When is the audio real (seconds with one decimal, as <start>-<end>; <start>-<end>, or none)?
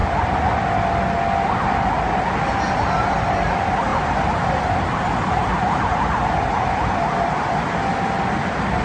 0.0-8.8